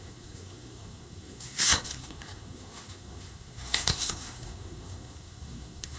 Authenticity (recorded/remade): remade